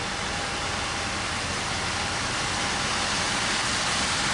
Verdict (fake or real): real